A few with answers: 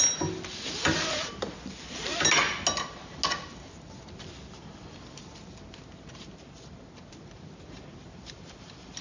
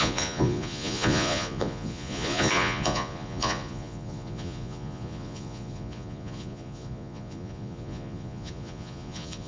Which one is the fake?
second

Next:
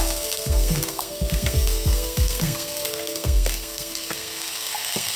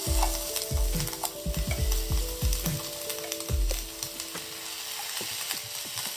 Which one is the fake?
first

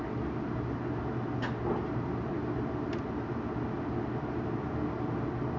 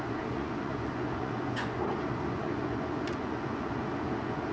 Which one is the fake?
second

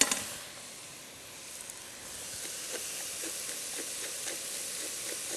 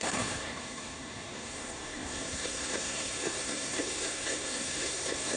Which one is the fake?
second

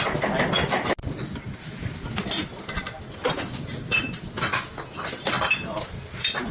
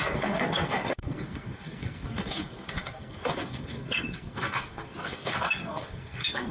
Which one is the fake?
second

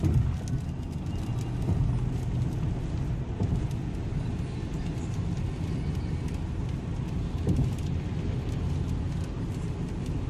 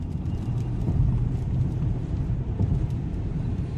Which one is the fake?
second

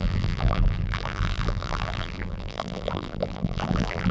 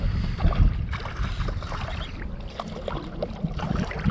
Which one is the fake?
first